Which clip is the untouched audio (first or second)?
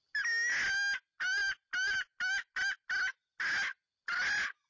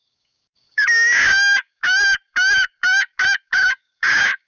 first